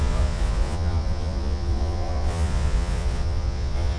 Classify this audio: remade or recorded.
remade